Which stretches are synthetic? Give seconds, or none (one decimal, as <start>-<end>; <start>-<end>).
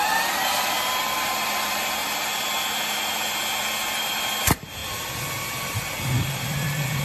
0.0-2.0; 4.0-7.0